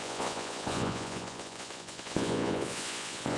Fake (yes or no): yes